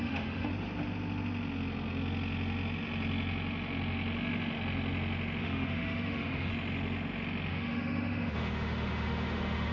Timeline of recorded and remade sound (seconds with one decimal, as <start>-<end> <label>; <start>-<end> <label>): 0.0-0.5 remade; 0.5-5.4 recorded; 5.4-6.5 remade; 6.5-7.5 recorded; 7.5-9.7 remade